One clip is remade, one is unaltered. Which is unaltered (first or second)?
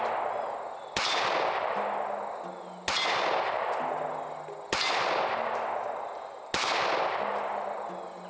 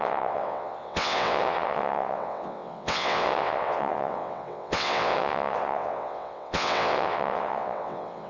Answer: first